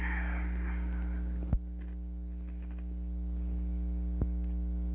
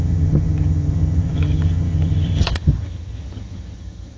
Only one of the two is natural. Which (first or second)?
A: first